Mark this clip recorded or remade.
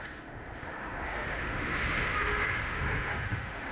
remade